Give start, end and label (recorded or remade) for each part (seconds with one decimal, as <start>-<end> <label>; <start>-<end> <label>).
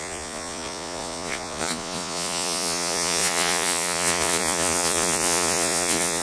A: 0.0-6.2 remade